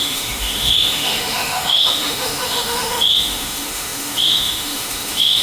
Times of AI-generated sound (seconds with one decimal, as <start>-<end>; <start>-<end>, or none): 0.0-5.4